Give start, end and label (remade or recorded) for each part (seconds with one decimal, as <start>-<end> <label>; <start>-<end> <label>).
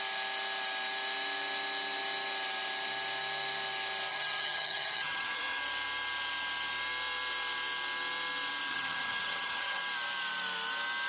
0.0-4.1 recorded; 4.1-5.6 remade; 5.6-8.7 recorded; 8.7-9.8 remade; 9.8-11.1 recorded